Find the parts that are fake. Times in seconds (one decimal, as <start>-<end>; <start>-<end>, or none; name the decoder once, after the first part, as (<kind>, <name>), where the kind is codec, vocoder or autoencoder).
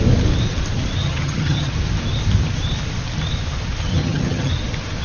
1.0-1.7 (vocoder, HiFi-GAN); 3.9-4.5